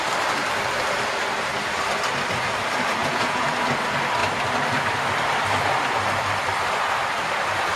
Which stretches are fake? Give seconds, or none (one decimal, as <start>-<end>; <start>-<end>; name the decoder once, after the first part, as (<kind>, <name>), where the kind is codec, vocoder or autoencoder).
3.0-3.5 (vocoder, Vocos)